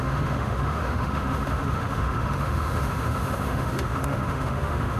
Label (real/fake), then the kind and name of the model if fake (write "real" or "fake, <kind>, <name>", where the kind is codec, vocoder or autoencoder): fake, autoencoder, DAC-VAE